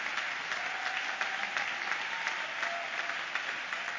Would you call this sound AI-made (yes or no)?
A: no